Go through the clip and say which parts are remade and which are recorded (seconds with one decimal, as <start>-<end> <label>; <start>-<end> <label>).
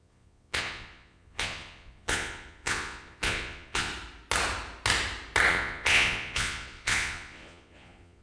0.0-3.9 remade; 3.9-5.5 recorded; 5.5-8.2 remade